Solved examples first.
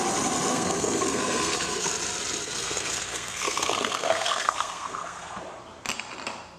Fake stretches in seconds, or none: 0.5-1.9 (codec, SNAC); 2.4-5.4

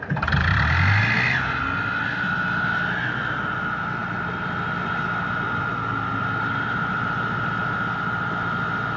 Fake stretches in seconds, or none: none

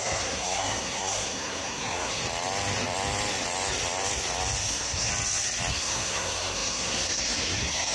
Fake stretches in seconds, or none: 0.0-2.2 (codec, SNAC); 4.6-5.1; 5.7-7.9

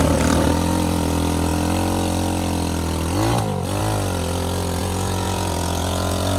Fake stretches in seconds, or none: 4.8-6.4 (vocoder, Vocos)

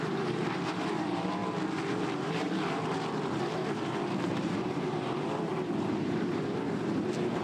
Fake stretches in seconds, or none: 0.0-1.4 (vocoder, BigVGAN v2); 1.9-6.4; 6.9-7.4

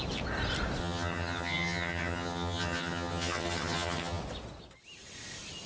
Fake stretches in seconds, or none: 0.8-4.2 (vocoder, HiFi-GAN)

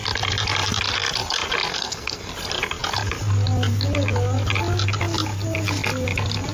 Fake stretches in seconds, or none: 1.7-2.3 (codec, SNAC)